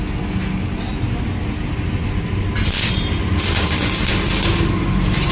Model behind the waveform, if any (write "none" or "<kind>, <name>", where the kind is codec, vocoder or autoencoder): none